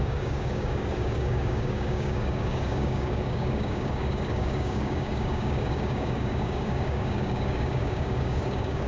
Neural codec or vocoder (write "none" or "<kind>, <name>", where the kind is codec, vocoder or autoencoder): codec, DAC